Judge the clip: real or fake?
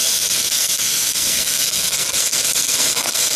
fake